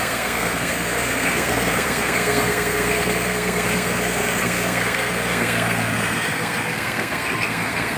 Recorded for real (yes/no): no